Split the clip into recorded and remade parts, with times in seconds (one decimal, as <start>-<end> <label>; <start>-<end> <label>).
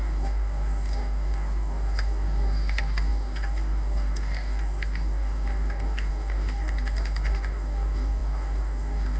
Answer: 0.0-9.2 remade